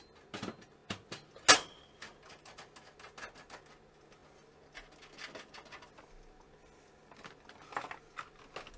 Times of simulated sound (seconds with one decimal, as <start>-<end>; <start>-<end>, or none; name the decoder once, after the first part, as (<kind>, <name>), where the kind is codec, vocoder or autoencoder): none